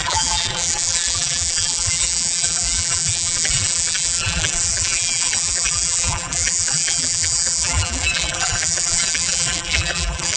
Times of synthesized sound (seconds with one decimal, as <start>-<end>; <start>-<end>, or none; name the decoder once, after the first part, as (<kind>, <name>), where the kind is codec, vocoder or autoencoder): 0.0-10.4 (vocoder, BigVGAN v2)